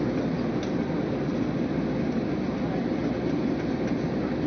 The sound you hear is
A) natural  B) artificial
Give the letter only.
A